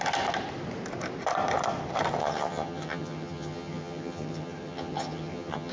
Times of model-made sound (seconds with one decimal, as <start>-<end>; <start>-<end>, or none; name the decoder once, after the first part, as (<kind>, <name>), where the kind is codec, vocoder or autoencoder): 2.2-5.7 (vocoder, HiFi-GAN)